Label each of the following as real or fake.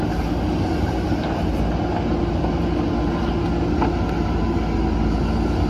real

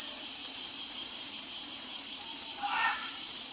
fake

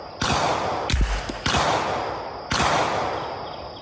real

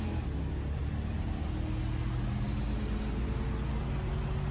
real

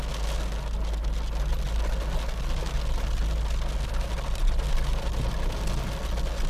real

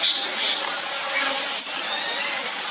real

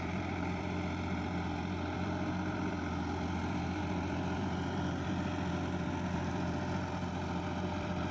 fake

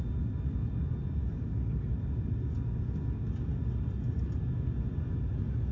real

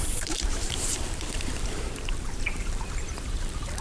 fake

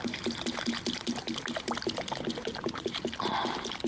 real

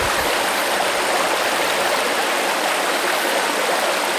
real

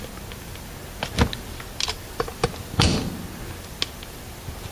real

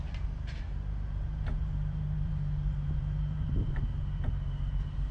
fake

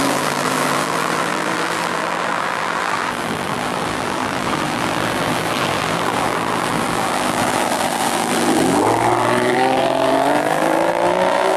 fake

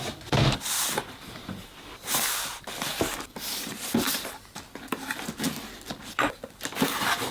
fake